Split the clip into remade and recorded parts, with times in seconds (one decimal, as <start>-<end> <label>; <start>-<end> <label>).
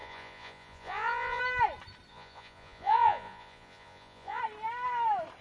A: 0.0-1.4 remade; 1.4-2.1 recorded; 2.1-4.4 remade; 4.4-5.4 recorded